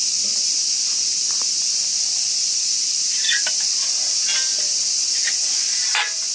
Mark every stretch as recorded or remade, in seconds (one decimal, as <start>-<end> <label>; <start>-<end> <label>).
0.0-0.6 remade; 0.6-1.9 recorded; 1.9-4.1 remade; 4.1-6.3 recorded